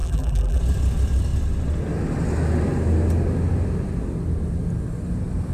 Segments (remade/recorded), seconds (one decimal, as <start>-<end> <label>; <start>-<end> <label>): 0.0-0.6 remade; 0.6-5.5 recorded